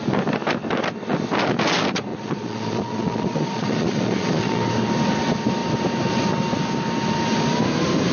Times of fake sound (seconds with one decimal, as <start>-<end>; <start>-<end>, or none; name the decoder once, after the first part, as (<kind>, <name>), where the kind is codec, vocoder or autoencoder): 2.1-4.6 (vocoder, Vocos)